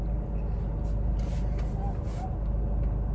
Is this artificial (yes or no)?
no